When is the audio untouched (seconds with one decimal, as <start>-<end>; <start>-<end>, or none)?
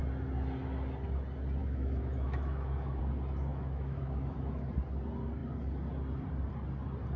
0.0-1.6; 3.0-3.5; 4.7-7.2